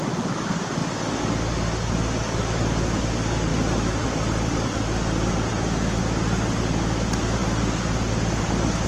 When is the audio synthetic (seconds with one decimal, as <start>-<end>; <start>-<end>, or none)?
3.5-6.0